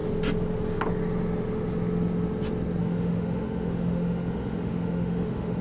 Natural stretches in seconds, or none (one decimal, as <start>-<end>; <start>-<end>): 0.0-2.8